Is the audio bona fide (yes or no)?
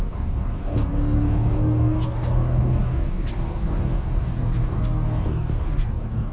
no